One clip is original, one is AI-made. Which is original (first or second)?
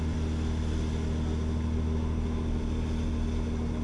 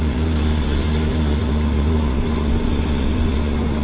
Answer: first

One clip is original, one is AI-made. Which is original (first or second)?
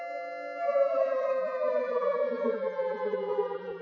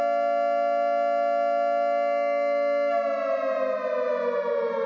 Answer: second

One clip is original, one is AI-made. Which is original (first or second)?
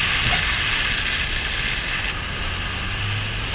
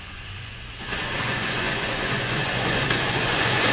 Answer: first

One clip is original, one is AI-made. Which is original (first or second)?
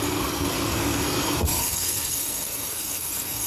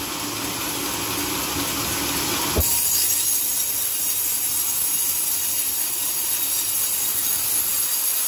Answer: second